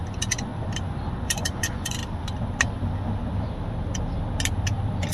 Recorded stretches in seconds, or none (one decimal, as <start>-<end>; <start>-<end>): 0.5-1.1; 2.0-5.1